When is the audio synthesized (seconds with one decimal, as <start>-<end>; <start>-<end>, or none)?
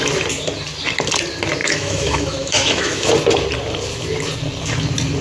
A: 1.6-3.1